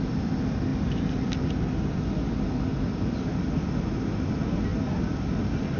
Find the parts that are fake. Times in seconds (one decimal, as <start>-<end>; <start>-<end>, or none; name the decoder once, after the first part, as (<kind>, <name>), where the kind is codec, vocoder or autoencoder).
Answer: 4.7-5.8 (vocoder, BigVGAN v2)

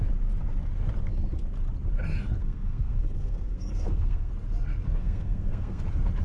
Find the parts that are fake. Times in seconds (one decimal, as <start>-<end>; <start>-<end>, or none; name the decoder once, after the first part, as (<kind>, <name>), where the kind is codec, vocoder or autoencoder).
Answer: 2.4-4.3 (codec, SNAC); 5.0-5.8

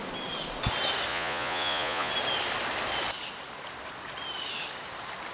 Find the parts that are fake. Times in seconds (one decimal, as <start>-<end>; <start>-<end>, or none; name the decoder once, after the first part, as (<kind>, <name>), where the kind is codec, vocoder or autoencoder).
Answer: 1.1-2.1 (vocoder, Vocos)

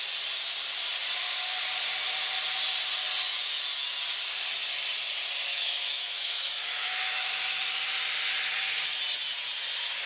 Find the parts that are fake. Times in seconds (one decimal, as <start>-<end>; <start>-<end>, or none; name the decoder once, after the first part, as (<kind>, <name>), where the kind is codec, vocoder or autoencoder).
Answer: 5.5-7.6 (autoencoder, DAC-VAE)